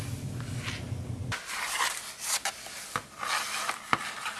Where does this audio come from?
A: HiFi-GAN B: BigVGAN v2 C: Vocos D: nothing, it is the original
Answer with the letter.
D